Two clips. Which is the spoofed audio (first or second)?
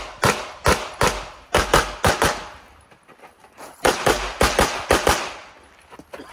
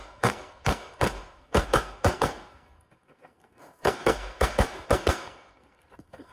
second